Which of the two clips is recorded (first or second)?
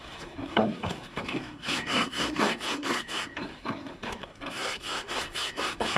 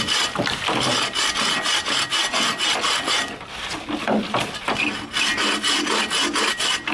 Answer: second